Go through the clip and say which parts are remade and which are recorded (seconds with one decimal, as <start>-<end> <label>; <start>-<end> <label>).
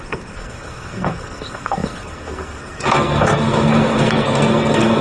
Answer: 0.0-5.0 remade